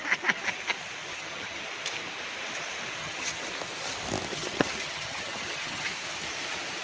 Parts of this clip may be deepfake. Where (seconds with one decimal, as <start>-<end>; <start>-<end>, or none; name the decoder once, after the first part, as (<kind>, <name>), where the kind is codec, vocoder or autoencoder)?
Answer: 1.1-1.6 (vocoder, HiFi-GAN); 3.0-3.5; 4.3-5.9